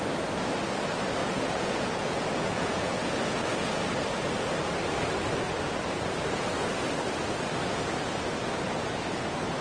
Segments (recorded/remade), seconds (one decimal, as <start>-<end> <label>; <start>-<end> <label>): 0.0-1.2 recorded; 1.2-3.8 remade; 3.8-9.6 recorded